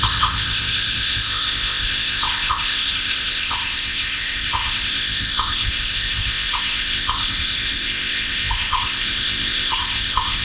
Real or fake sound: fake